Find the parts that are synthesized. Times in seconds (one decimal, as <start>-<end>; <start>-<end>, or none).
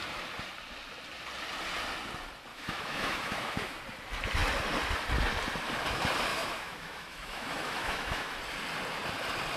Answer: 2.5-3.8; 6.3-8.4